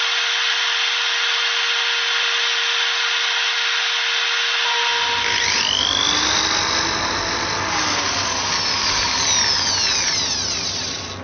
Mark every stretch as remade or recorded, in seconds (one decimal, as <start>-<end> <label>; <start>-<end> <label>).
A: 0.0-11.2 recorded